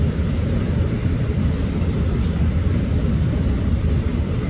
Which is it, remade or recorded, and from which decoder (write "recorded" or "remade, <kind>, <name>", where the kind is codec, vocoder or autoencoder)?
recorded